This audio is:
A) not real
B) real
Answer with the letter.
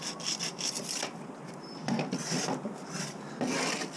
B